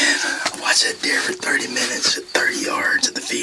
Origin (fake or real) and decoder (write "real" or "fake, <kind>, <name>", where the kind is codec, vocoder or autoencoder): fake, vocoder, BigVGAN v2